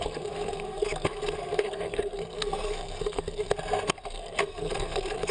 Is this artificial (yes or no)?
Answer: yes